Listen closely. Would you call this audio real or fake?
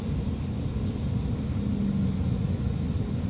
real